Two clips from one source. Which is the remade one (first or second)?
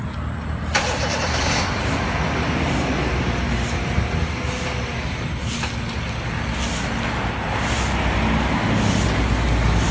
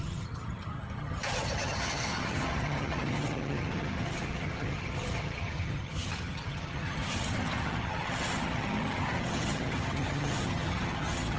second